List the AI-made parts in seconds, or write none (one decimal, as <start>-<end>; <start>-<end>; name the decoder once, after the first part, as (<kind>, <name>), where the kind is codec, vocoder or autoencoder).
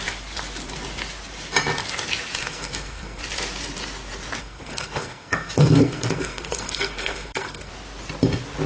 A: 2.4-3.2 (codec, SNAC); 4.4-7.7